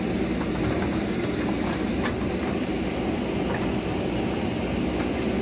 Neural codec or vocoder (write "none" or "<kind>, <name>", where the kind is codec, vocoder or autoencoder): none